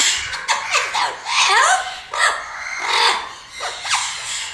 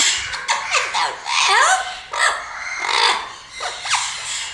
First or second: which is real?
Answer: second